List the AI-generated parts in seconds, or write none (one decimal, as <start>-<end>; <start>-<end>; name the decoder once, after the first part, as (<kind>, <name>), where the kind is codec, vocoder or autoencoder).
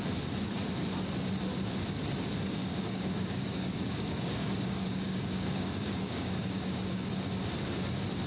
2.6-7.1 (codec, DAC)